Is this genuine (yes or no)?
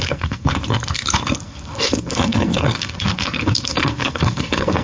no